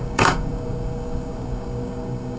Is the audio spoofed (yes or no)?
yes